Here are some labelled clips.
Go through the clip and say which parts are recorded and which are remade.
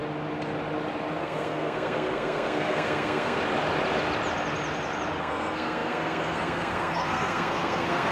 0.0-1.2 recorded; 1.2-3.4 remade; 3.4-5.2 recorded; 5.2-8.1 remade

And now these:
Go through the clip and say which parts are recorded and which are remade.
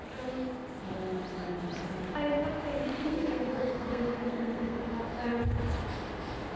0.0-2.8 recorded; 2.8-4.8 remade; 4.8-6.6 recorded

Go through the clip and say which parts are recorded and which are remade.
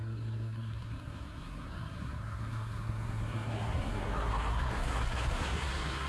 0.0-6.1 remade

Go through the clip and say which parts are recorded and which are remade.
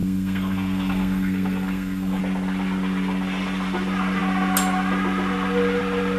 0.0-2.2 remade; 2.2-6.2 recorded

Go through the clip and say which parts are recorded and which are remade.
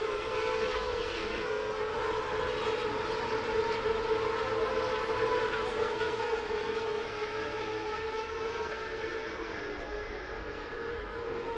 0.0-1.9 remade; 1.9-5.7 recorded; 5.7-11.6 remade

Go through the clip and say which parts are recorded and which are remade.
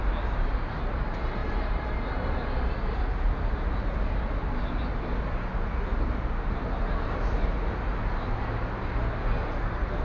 0.0-10.0 recorded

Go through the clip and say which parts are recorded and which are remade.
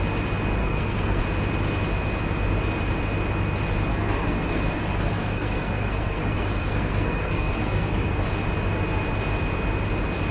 0.0-0.6 recorded; 0.6-1.2 remade; 1.2-3.9 recorded; 3.9-8.1 remade; 8.1-10.3 recorded